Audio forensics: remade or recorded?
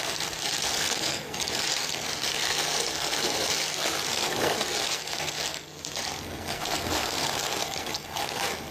remade